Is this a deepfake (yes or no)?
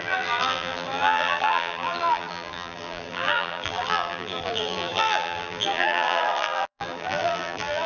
yes